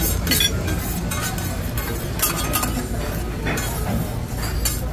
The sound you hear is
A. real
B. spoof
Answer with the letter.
A